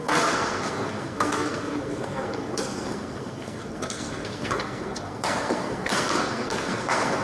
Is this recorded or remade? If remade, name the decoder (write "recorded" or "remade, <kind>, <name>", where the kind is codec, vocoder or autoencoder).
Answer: remade, codec, SNAC